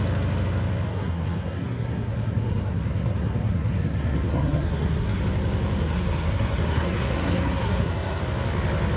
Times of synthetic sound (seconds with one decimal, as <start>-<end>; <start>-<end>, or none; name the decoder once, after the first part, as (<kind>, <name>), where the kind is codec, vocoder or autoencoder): 0.9-5.2 (codec, SNAC); 5.8-8.2